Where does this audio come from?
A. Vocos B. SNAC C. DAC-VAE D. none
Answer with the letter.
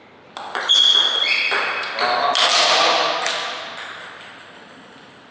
D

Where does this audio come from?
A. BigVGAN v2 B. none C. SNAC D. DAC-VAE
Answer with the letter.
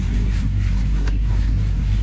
C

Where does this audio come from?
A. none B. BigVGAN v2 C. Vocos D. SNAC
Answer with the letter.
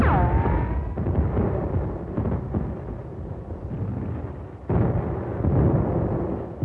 A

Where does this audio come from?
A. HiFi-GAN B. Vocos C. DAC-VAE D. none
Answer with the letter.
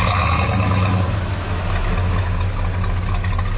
D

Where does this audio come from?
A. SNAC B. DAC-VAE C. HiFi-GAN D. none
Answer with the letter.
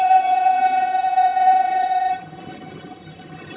C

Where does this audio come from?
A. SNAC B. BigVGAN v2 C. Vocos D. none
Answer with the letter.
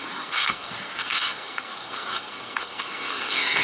A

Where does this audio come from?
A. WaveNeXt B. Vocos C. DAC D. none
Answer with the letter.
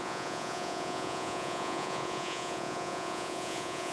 B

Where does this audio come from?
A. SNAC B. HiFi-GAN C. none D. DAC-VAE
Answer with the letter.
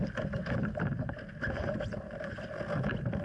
C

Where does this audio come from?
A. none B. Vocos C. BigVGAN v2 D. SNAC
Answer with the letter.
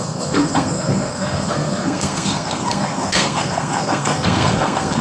D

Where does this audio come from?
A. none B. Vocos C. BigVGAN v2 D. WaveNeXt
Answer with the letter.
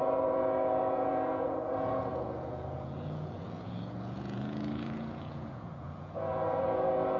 B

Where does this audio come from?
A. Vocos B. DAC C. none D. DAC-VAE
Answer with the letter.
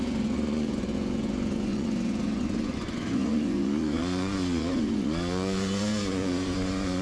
A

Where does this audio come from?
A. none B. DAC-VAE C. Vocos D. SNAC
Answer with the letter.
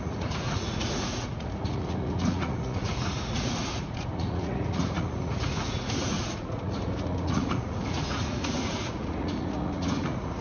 C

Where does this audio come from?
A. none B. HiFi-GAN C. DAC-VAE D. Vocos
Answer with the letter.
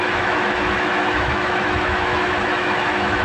C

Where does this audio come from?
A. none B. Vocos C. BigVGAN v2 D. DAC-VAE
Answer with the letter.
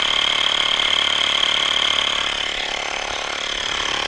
C